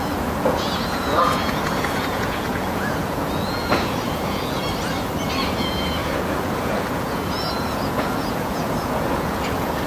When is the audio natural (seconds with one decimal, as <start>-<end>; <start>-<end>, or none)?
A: 4.6-5.4